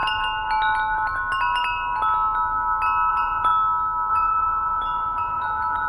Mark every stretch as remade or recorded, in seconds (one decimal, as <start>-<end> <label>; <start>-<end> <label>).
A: 0.0-3.1 recorded; 3.1-3.5 remade; 3.5-4.1 recorded; 4.1-5.9 remade